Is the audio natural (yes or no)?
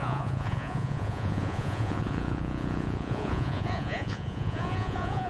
no